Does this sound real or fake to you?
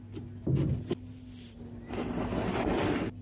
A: real